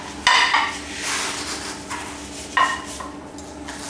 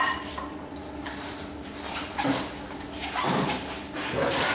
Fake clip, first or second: second